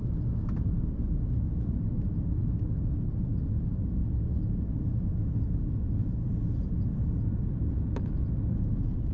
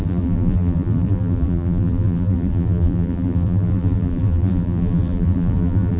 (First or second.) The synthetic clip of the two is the second